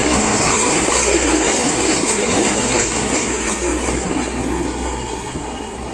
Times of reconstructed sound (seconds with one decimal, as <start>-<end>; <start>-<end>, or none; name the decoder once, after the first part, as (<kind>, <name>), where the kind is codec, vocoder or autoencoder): 0.0-5.9 (codec, SNAC)